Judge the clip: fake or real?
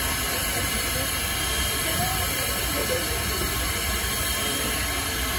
fake